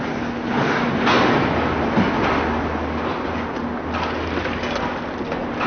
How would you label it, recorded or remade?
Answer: recorded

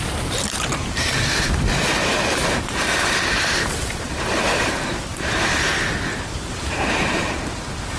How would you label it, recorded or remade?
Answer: remade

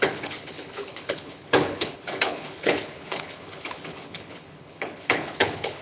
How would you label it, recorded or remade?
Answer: remade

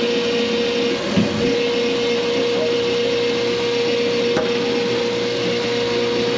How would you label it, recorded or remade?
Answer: recorded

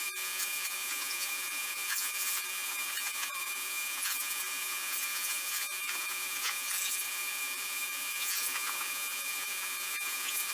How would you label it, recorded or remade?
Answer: remade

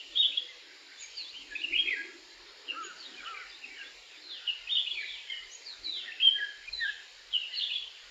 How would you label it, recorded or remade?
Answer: recorded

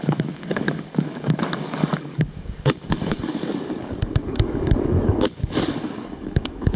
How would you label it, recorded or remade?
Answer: remade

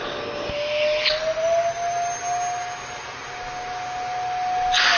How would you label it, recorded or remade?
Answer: recorded